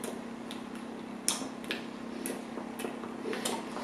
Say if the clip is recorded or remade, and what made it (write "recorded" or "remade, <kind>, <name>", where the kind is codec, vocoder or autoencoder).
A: recorded